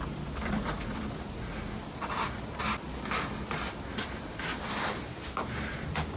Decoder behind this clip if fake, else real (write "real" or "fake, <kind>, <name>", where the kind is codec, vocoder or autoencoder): fake, vocoder, BigVGAN v2